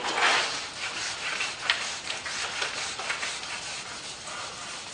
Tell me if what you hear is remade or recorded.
recorded